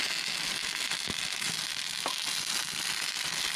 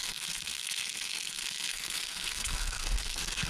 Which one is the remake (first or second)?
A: second